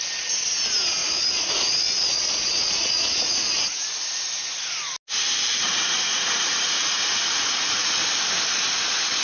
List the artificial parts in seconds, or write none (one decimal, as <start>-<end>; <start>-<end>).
1.0-4.8; 5.5-8.0